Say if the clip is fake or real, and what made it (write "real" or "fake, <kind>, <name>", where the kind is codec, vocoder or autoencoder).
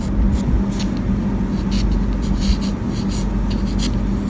real